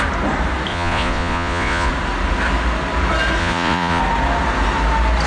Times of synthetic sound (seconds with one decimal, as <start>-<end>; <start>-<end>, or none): 0.7-1.9; 3.4-4.0